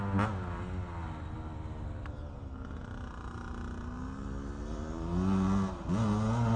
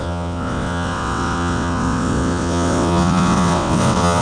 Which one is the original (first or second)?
first